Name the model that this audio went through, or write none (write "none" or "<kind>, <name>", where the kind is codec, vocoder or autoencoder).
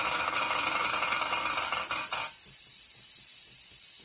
none